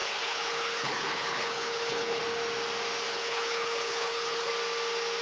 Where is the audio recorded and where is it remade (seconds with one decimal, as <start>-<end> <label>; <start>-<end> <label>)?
0.0-2.2 remade; 2.2-3.1 recorded; 3.1-4.5 remade; 4.5-5.2 recorded